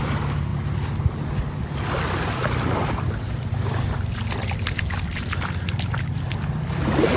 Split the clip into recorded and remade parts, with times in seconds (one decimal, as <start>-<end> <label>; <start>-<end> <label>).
0.0-2.8 recorded; 2.8-3.5 remade; 3.5-7.2 recorded